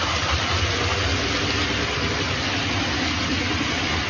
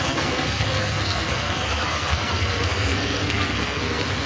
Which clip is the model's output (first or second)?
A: second